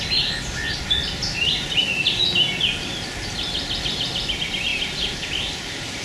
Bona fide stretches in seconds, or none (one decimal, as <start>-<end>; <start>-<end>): 0.0-6.0